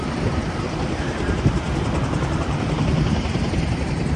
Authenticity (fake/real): fake